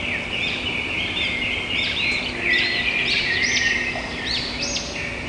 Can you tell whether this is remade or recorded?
remade